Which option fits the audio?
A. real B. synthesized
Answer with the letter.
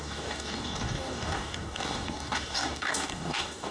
B